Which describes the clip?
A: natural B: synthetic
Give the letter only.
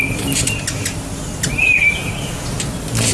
A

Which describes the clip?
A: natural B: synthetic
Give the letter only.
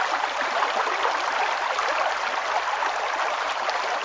A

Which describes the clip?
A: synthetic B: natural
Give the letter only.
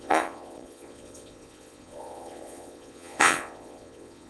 A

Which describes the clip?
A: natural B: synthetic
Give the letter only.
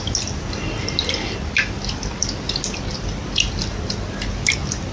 A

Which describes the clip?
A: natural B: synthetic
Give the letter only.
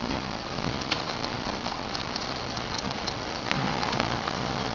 B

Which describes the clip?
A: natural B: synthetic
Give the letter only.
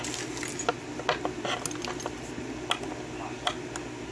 A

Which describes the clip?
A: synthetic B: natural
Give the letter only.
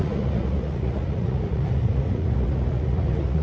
A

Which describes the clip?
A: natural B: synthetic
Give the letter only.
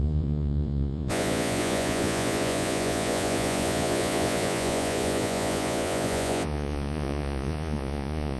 B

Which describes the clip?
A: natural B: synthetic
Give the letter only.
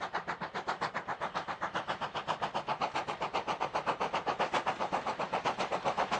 A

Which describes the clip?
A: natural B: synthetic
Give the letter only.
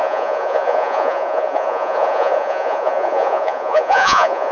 B